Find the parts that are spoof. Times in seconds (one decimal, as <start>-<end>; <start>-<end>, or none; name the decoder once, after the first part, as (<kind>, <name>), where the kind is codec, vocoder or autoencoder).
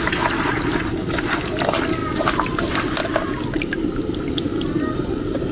none